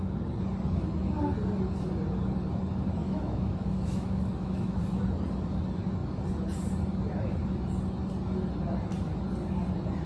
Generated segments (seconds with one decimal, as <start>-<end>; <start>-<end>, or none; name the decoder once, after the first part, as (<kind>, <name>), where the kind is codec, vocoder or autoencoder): 3.0-4.8 (autoencoder, DAC-VAE)